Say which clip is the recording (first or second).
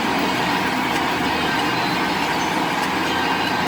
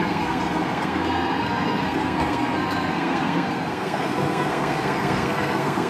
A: first